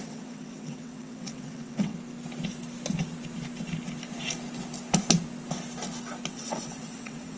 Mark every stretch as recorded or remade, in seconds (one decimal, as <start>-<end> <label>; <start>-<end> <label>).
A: 0.0-1.9 remade; 1.9-6.3 recorded; 6.3-7.4 remade